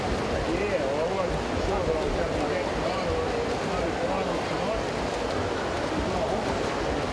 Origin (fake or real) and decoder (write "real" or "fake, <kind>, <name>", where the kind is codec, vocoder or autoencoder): real